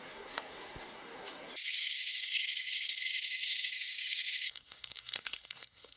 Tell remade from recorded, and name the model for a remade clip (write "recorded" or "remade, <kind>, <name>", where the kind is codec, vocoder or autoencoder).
remade, codec, SNAC